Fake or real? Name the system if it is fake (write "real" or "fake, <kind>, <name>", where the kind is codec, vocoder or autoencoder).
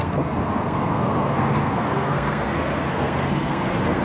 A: fake, codec, SNAC